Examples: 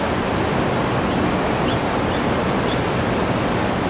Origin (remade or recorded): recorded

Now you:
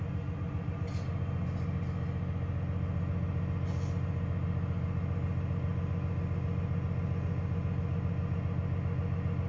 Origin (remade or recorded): recorded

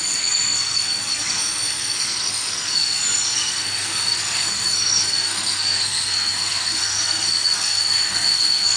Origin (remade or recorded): remade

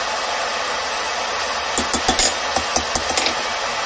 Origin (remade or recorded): recorded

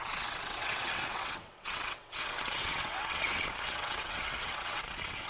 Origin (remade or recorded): remade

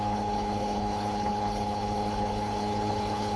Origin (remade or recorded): remade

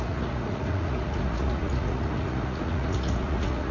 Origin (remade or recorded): remade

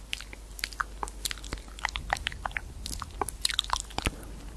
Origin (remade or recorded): recorded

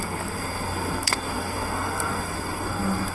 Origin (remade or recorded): remade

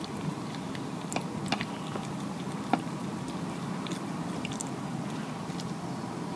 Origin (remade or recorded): recorded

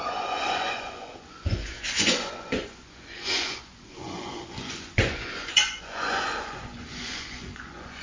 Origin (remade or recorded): remade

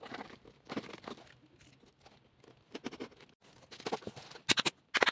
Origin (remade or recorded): recorded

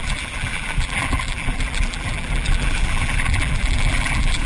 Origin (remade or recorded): remade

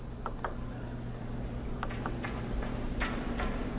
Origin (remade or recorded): recorded